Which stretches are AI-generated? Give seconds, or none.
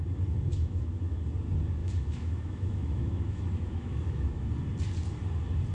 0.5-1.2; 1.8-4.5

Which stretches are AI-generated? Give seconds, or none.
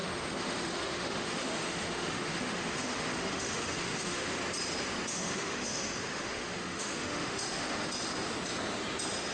0.0-4.4; 5.1-7.9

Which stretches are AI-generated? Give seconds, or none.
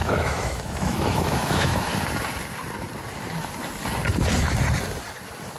0.0-1.9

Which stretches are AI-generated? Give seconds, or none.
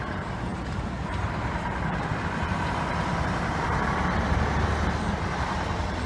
none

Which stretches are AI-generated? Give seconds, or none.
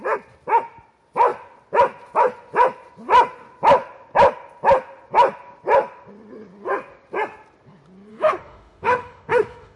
8.1-9.8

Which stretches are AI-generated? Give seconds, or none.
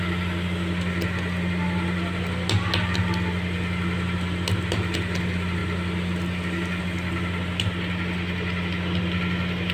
none